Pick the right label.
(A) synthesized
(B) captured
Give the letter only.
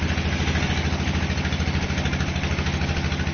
B